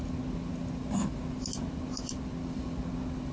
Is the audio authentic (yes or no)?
yes